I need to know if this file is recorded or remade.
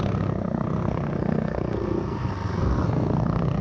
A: remade